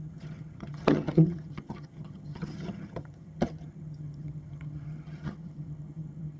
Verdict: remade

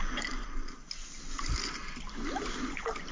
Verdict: recorded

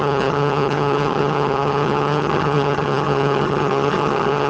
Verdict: remade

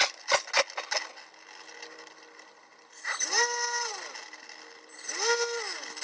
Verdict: recorded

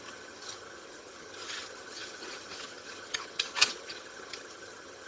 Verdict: remade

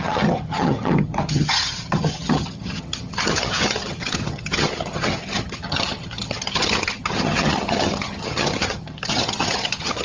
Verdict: remade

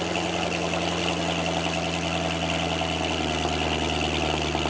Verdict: recorded